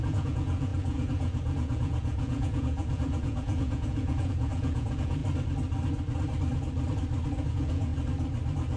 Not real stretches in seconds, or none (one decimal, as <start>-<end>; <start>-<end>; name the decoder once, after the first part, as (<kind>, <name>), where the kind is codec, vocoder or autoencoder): 0.0-5.2 (vocoder, Vocos); 7.5-7.9